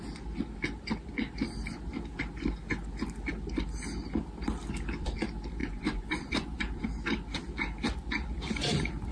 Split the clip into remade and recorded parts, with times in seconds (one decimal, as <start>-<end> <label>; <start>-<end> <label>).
0.0-5.6 recorded; 5.6-6.8 remade; 6.8-9.1 recorded

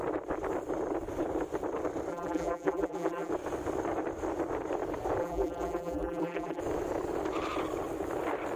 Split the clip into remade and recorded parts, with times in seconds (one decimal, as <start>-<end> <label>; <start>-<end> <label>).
0.0-2.1 recorded; 2.1-3.3 remade; 3.3-5.2 recorded; 5.2-6.6 remade; 6.6-8.6 recorded